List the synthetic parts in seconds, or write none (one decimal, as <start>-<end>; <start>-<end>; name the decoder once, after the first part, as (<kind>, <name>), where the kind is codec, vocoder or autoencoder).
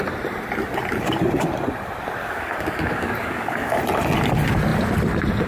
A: 2.2-3.8 (codec, DAC)